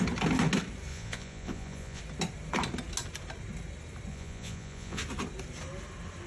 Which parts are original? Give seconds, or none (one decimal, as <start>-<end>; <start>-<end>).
0.0-0.9; 2.0-4.1; 5.0-6.3